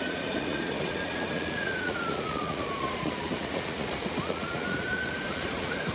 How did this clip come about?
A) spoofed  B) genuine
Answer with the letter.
A